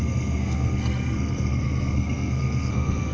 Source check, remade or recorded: remade